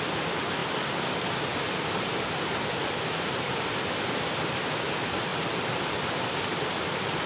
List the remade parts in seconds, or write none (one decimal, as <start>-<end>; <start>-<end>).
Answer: 0.0-0.6; 4.8-7.3